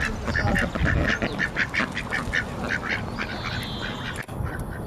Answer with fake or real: real